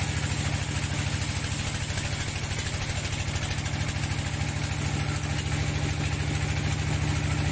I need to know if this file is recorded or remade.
recorded